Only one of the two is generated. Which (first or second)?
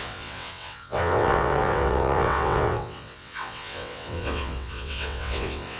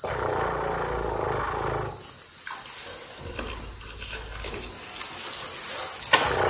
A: first